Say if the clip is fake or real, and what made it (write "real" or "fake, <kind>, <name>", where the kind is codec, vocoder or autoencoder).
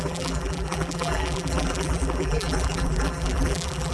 fake, vocoder, BigVGAN v2